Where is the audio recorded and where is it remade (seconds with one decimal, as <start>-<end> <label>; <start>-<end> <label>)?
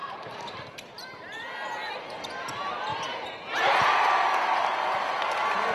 0.0-0.9 remade; 0.9-5.7 recorded